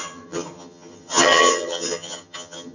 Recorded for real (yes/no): no